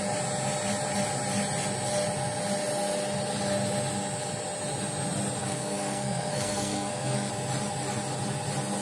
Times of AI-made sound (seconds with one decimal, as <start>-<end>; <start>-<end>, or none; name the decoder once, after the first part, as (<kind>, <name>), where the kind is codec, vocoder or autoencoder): 5.4-7.3 (codec, SNAC)